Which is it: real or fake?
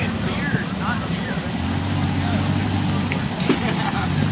real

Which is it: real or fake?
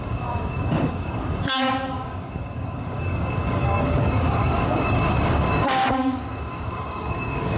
fake